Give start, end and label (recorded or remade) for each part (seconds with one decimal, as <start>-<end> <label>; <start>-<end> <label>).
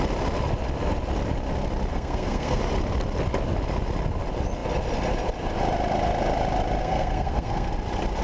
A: 0.0-1.9 recorded; 1.9-2.6 remade; 2.6-6.8 recorded; 6.8-7.7 remade; 7.7-8.2 recorded